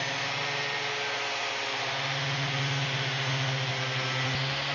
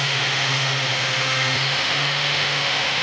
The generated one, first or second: second